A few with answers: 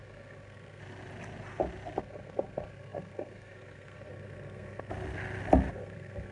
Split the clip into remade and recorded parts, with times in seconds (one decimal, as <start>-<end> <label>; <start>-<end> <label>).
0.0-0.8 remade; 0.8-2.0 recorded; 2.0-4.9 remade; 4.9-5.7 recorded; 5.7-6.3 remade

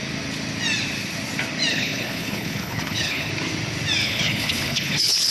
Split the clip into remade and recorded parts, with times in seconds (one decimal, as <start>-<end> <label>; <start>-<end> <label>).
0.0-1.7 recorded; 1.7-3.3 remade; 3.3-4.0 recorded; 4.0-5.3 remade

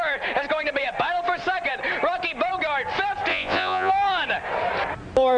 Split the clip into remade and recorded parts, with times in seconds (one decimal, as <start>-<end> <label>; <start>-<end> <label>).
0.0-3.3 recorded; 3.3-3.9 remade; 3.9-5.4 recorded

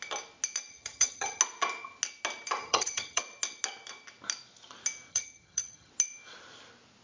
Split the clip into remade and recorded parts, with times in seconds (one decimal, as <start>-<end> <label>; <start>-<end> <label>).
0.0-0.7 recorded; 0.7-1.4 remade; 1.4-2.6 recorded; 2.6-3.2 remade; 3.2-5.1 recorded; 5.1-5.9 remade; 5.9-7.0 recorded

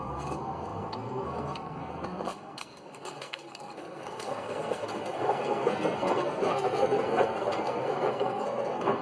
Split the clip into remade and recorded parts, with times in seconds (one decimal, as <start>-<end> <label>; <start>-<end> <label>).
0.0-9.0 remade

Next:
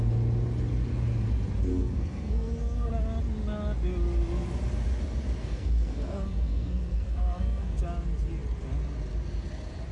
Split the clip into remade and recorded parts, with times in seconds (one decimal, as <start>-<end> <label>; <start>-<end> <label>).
0.0-1.7 recorded; 1.7-2.9 remade; 2.9-5.4 recorded; 5.4-7.8 remade; 7.8-9.9 recorded

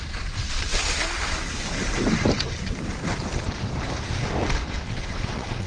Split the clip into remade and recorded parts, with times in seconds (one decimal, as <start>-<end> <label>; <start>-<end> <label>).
0.0-4.9 recorded; 4.9-5.7 remade